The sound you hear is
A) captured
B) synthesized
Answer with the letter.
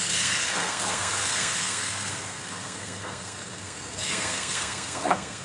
B